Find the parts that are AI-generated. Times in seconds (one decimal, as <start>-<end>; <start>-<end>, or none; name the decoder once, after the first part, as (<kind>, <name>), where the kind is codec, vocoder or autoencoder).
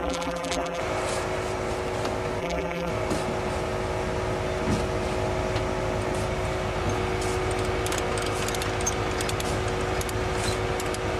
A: 0.0-0.8 (vocoder, BigVGAN v2); 2.4-2.9